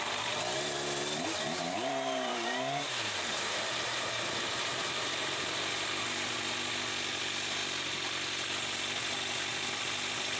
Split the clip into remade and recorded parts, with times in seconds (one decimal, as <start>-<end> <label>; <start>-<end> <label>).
0.0-1.6 recorded; 1.6-4.3 remade; 4.3-10.4 recorded